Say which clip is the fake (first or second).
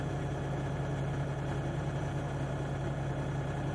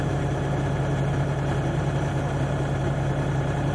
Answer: second